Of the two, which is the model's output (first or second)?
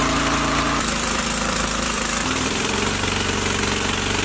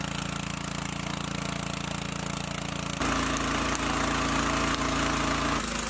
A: first